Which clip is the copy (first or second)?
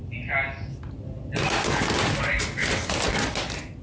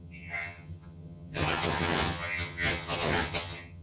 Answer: second